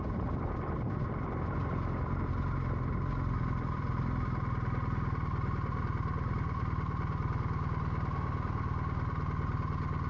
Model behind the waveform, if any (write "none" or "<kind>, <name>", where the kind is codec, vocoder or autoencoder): none